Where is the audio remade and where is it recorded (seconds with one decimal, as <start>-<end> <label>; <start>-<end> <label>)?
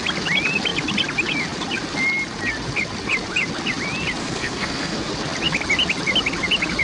0.0-4.2 recorded; 4.2-5.1 remade; 5.1-6.8 recorded